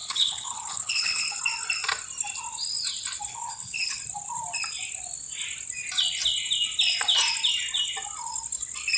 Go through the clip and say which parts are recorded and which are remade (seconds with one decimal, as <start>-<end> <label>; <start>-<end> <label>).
0.0-1.4 remade; 1.4-3.3 recorded; 3.3-4.0 remade; 4.0-9.0 recorded